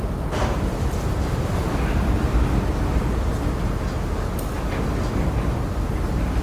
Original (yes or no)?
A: yes